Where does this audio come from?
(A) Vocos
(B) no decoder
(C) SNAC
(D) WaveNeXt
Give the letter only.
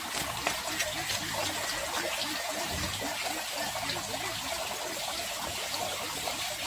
B